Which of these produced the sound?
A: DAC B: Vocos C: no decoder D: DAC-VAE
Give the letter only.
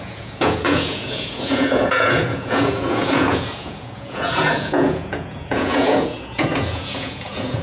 B